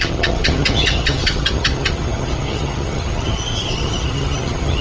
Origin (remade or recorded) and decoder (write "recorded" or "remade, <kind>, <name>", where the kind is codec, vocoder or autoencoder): remade, vocoder, HiFi-GAN